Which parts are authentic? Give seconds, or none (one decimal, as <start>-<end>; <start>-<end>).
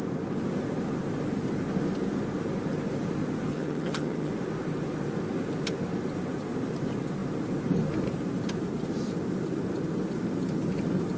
0.0-3.5; 4.3-11.2